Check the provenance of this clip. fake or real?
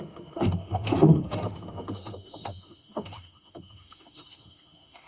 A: fake